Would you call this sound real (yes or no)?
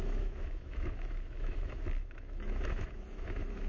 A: no